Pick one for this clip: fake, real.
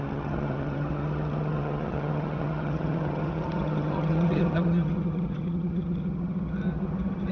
fake